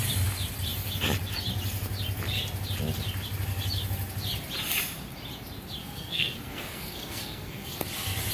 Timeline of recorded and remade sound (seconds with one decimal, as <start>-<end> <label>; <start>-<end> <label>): 0.0-5.8 recorded; 5.8-7.8 remade; 7.8-8.3 recorded

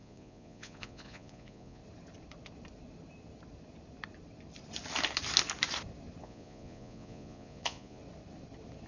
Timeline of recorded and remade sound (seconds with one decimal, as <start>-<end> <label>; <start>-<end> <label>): 0.0-1.8 remade; 1.8-6.2 recorded; 6.2-8.0 remade; 8.0-8.9 recorded

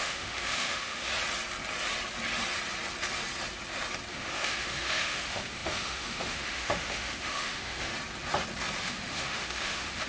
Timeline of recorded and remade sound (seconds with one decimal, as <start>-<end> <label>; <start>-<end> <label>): 0.0-1.1 remade; 1.1-4.1 recorded; 4.1-7.9 remade; 7.9-8.8 recorded; 8.8-10.1 remade

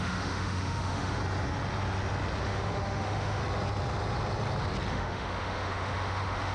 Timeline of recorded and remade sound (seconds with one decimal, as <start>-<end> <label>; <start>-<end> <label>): 0.0-1.2 remade; 1.2-2.4 recorded; 2.4-3.4 remade; 3.4-4.9 recorded; 4.9-6.5 remade